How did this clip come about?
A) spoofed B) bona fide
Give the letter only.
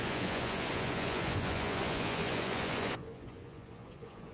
A